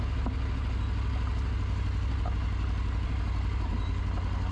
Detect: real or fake real